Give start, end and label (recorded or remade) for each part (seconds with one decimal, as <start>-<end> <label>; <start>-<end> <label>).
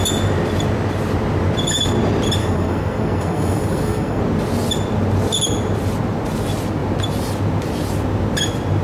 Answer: 0.0-2.4 recorded; 2.4-4.2 remade; 4.2-8.8 recorded